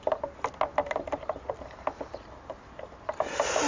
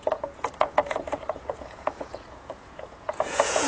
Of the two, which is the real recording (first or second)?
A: first